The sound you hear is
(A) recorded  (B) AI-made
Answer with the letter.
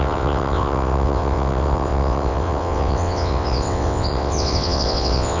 B